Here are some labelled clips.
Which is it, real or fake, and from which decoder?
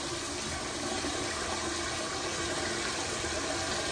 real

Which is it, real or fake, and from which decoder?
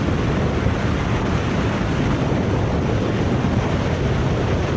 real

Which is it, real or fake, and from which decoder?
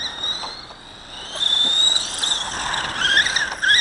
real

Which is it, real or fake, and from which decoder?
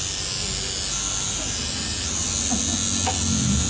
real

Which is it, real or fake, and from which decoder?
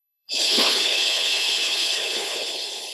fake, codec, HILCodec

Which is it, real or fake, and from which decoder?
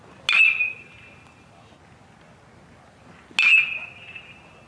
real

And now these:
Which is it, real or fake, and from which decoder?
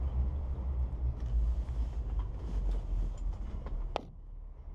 real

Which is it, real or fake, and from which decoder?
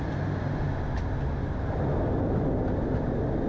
real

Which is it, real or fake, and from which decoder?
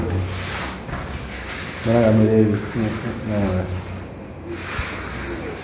real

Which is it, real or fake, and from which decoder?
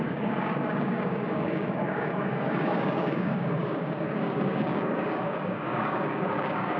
fake, codec, DAC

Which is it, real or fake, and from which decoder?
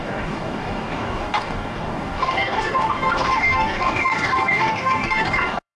fake, codec, DAC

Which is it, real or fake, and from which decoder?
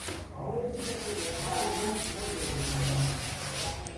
real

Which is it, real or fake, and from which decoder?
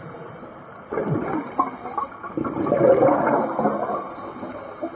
real